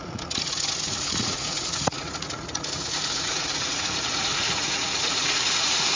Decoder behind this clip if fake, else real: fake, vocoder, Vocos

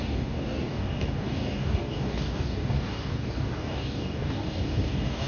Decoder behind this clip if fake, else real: fake, codec, DAC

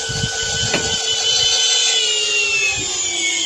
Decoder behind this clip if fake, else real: real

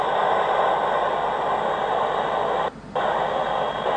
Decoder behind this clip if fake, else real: real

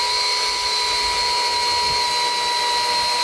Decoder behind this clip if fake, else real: real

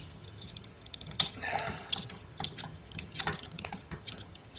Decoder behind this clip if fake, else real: fake, vocoder, HiFi-GAN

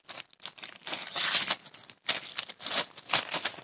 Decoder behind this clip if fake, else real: real